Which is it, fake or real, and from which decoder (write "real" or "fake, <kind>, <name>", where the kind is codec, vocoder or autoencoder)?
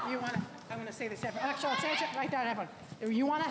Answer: real